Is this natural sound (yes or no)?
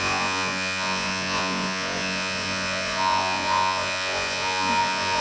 no